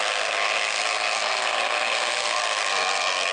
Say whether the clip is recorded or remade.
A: remade